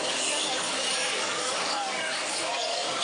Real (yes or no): no